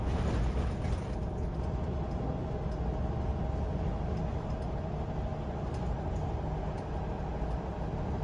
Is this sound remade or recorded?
recorded